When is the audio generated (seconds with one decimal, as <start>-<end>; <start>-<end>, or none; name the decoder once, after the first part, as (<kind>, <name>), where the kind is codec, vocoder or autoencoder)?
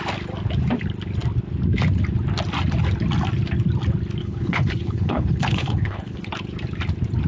4.2-6.3 (codec, HILCodec)